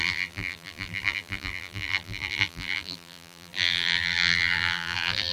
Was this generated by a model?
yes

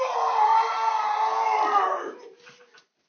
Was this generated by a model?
no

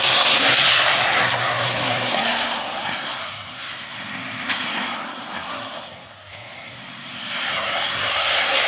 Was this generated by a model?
yes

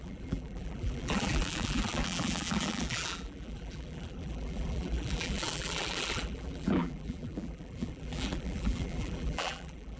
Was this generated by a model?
yes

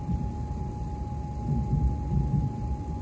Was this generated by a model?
no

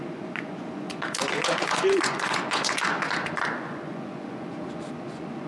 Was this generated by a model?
yes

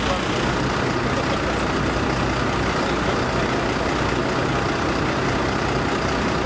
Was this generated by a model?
no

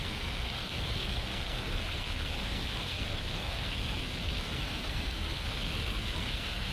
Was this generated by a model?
yes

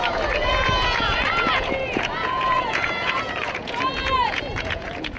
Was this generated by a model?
yes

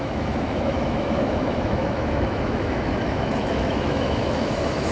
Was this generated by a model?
yes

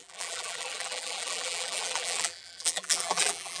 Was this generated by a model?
yes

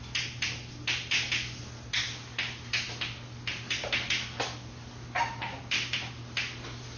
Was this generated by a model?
no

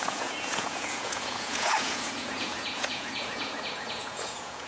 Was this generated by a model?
yes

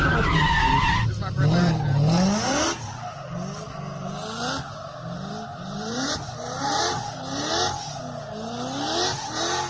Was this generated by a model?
no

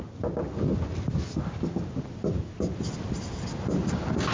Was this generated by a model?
no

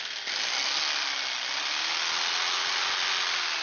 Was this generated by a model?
no